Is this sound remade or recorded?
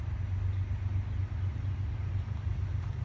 recorded